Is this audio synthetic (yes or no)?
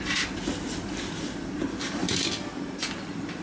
no